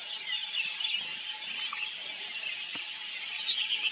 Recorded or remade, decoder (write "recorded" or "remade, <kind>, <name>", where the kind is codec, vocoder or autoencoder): recorded